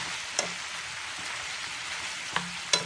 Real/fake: real